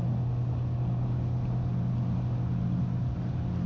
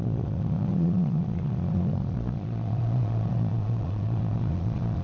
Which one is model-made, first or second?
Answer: second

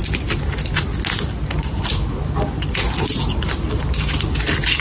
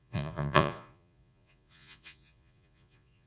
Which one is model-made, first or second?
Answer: second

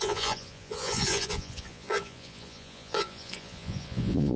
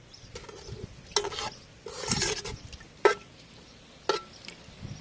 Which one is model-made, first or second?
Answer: first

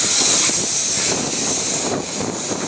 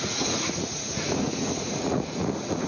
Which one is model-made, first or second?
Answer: second